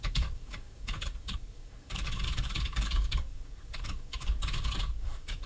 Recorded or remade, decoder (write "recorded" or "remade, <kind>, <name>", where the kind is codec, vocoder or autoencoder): remade, codec, DAC